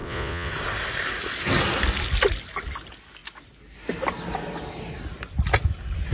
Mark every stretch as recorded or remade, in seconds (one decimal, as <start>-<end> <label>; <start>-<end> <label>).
0.0-0.5 remade; 0.5-6.1 recorded